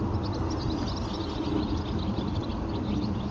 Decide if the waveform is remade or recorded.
recorded